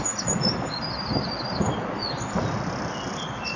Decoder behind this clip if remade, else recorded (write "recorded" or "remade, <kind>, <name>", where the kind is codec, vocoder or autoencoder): recorded